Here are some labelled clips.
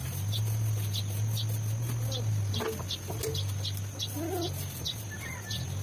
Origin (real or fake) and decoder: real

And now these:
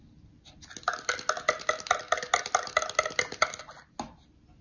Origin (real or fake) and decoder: real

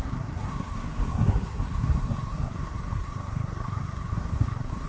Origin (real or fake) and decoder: fake, codec, SNAC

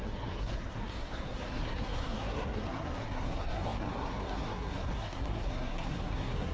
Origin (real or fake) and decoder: fake, codec, SNAC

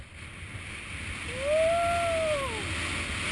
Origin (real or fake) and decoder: real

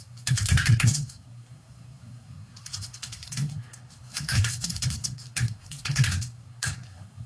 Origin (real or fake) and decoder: fake, codec, SNAC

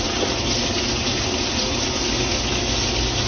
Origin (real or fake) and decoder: real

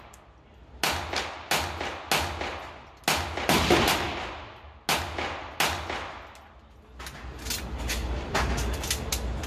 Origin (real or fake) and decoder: real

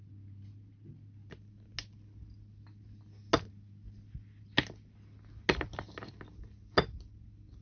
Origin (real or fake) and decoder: real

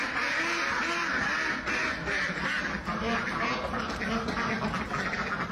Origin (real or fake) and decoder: real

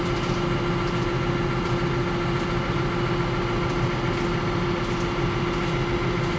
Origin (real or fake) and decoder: real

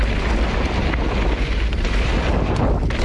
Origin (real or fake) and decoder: real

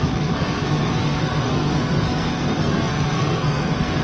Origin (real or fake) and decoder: fake, codec, SNAC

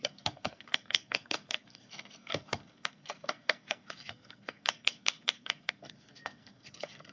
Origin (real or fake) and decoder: fake, codec, SNAC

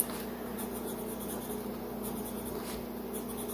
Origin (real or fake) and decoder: real